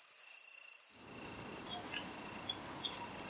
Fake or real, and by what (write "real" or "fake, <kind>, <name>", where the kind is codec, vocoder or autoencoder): real